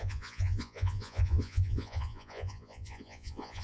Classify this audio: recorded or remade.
remade